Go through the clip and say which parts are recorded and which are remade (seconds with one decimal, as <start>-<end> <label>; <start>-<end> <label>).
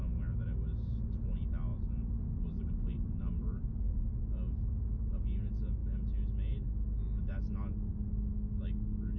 0.0-1.7 recorded; 1.7-4.1 remade; 4.1-9.2 recorded